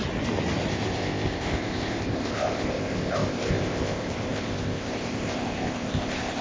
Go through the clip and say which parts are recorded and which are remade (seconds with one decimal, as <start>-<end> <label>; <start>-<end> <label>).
0.0-0.7 recorded; 0.7-6.4 remade